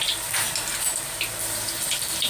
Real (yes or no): yes